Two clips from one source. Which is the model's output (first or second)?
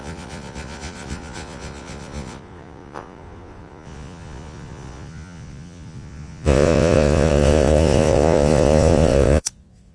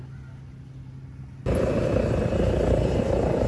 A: first